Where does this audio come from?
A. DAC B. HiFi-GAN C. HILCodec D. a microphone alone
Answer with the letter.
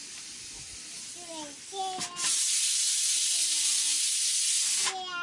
D